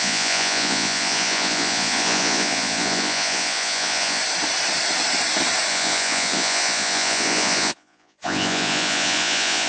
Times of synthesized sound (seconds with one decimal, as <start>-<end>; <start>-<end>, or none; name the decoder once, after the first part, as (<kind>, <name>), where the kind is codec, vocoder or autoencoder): 0.0-4.2 (vocoder, Vocos); 5.7-9.7